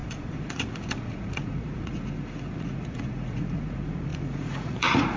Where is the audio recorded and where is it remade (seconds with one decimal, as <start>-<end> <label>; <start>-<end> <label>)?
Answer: 0.0-5.2 remade

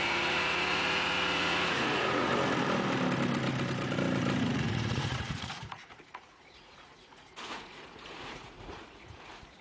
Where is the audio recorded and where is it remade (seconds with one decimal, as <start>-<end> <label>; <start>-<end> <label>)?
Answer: 0.0-2.3 remade; 2.3-4.4 recorded; 4.4-9.6 remade